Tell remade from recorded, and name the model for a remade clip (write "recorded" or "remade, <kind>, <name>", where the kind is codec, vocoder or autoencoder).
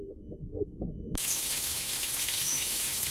remade, autoencoder, DAC-VAE